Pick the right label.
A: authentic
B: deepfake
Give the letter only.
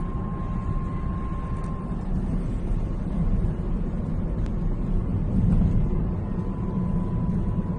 A